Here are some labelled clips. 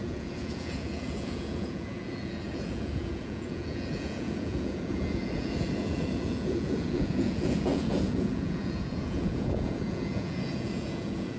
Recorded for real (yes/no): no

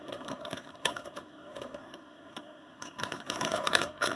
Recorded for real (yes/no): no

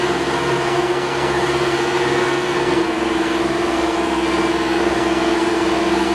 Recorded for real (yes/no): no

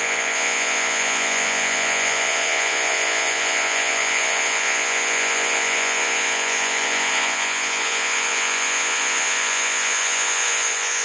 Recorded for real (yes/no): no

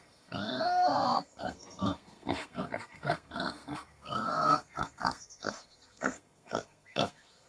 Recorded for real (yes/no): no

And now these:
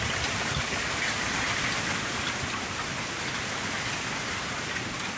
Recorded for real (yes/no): yes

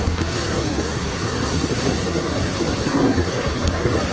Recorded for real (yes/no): no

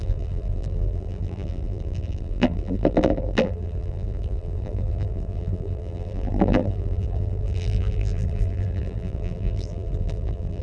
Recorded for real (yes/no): no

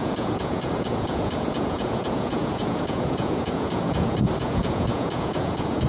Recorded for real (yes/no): no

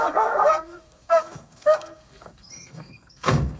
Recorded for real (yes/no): no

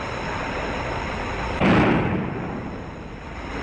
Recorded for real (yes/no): yes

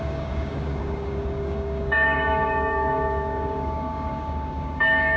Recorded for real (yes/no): no